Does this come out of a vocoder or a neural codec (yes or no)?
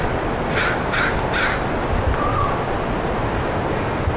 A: no